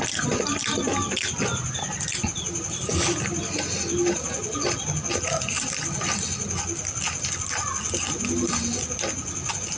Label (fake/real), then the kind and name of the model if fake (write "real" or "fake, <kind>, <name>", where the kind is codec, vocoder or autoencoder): real